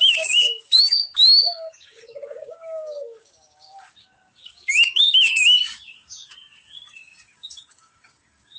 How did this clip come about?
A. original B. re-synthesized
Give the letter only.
B